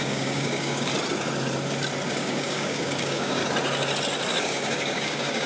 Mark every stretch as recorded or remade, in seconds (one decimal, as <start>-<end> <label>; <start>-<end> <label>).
0.0-0.9 remade; 0.9-2.1 recorded; 2.1-3.4 remade; 3.4-4.4 recorded; 4.4-5.5 remade